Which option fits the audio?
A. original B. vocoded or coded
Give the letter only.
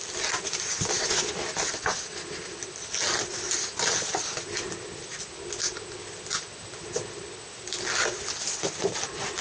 A